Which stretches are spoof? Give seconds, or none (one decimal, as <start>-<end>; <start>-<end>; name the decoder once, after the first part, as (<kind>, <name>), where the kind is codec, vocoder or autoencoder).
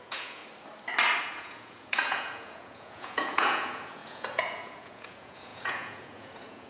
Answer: 0.0-0.4 (vocoder, Vocos); 1.2-6.7